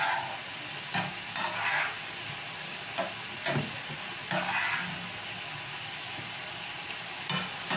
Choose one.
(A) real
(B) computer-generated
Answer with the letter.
A